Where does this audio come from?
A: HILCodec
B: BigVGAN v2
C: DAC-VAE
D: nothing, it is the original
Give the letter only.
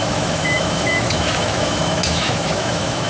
C